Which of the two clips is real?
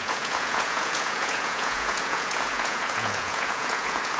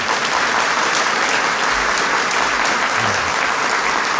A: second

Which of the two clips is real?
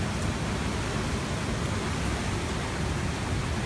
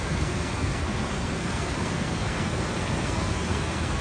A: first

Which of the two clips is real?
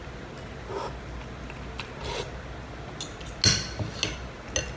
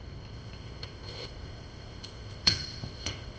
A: first